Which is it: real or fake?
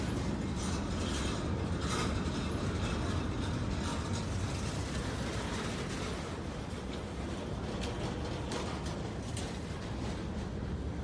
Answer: real